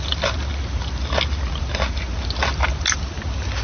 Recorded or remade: recorded